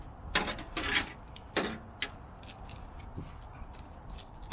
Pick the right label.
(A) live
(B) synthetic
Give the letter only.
A